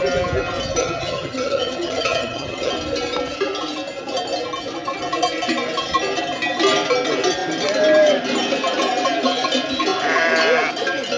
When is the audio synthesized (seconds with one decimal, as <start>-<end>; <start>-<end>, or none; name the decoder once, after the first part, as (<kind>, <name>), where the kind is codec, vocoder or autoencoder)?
0.8-2.7 (vocoder, HiFi-GAN)